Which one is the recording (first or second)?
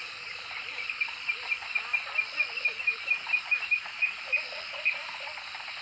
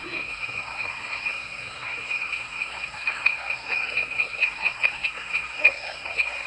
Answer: first